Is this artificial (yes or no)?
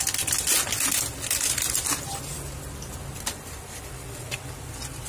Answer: no